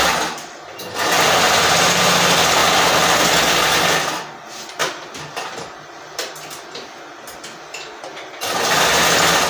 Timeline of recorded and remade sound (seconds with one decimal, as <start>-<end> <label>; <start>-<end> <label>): 0.0-9.5 recorded